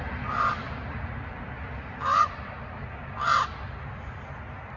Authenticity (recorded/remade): recorded